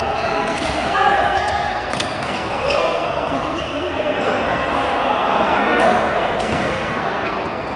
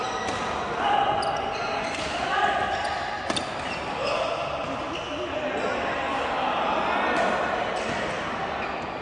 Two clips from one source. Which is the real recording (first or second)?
second